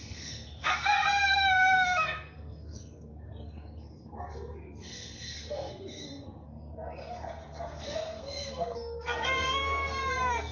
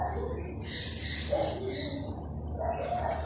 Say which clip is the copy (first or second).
first